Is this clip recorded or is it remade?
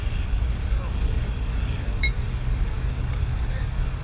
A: remade